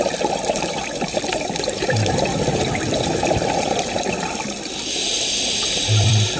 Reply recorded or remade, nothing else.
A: remade